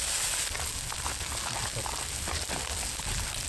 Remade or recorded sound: recorded